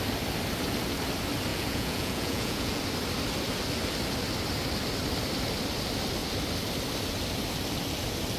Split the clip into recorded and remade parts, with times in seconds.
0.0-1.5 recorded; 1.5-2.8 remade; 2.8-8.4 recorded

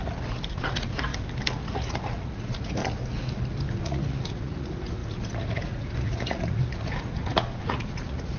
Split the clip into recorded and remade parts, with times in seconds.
0.0-0.5 recorded; 0.5-1.1 remade; 1.1-1.7 recorded; 1.7-2.8 remade; 2.8-3.8 recorded; 3.8-8.4 remade

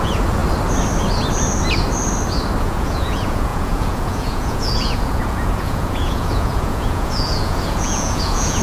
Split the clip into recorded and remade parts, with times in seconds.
0.0-0.4 remade; 0.4-2.6 recorded; 2.6-8.6 remade

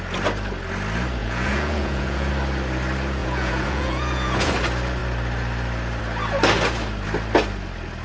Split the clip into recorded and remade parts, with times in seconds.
0.0-1.2 recorded; 1.2-2.3 remade; 2.3-3.2 recorded; 3.2-4.5 remade; 4.5-8.0 recorded